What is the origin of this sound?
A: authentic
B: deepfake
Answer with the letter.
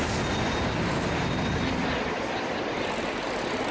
A